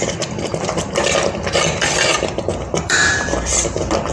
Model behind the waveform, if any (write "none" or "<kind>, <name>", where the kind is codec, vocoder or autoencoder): vocoder, BigVGAN v2